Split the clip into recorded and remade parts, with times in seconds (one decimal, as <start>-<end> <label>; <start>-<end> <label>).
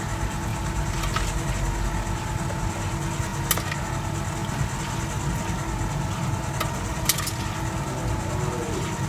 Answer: 0.0-9.1 recorded